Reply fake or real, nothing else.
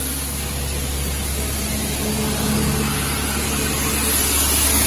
real